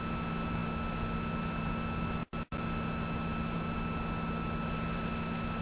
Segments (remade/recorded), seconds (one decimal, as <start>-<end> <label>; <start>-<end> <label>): 0.0-5.6 recorded